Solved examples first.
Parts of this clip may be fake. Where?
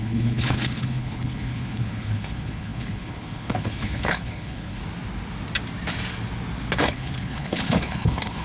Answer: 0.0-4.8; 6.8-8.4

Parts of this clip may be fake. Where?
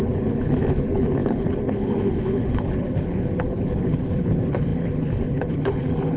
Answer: 0.0-6.2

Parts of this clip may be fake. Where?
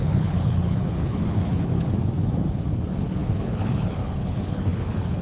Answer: 0.0-1.7; 2.5-5.2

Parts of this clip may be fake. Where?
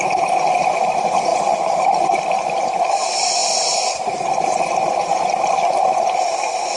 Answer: none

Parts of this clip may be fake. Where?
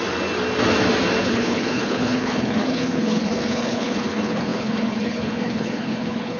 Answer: 1.2-6.4